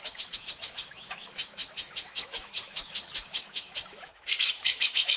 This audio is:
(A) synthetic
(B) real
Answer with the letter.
A